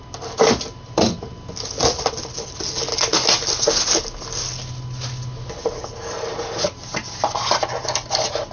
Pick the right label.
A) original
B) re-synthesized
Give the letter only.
A